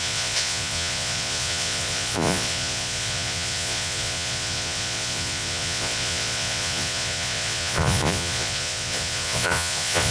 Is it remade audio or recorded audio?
remade